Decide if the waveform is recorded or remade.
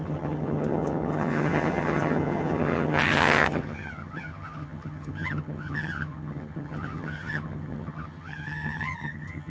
remade